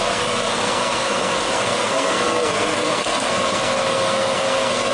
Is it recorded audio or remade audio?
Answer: remade